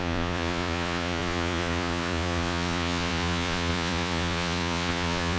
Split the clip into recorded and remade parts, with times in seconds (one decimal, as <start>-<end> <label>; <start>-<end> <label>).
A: 0.0-5.4 remade